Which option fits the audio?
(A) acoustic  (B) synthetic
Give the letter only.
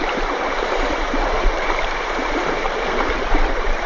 B